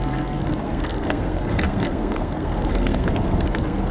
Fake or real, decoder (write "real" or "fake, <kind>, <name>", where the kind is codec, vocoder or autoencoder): fake, codec, SNAC